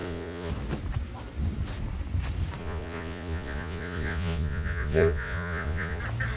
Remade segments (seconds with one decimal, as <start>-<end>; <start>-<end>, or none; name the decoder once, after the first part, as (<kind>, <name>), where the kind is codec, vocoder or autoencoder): 0.0-0.5 (vocoder, Vocos); 2.6-6.0